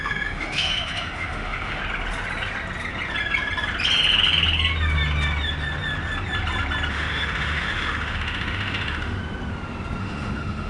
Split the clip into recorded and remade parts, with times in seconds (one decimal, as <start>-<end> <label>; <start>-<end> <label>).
0.0-1.8 remade; 1.8-6.9 recorded; 6.9-9.2 remade; 9.2-10.0 recorded; 10.0-10.7 remade